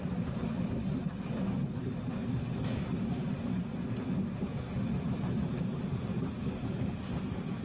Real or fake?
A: real